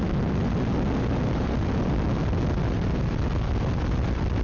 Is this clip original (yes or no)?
yes